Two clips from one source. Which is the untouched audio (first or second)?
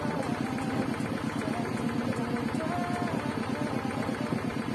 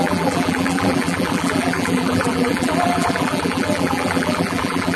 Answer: first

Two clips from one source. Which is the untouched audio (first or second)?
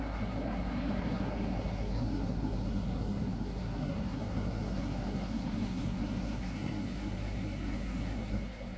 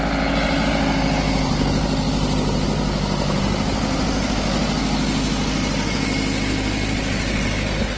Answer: second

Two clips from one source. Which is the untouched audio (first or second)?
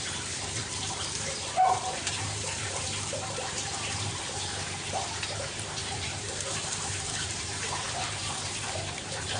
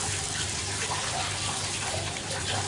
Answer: second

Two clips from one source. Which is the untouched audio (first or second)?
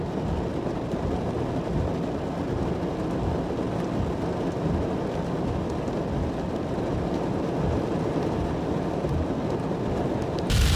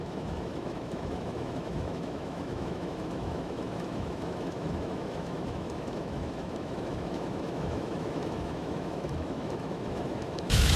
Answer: first